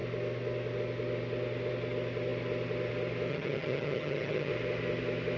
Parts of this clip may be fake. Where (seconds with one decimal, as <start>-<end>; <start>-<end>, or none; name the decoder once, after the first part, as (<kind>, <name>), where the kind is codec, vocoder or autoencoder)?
3.3-4.5 (vocoder, HiFi-GAN)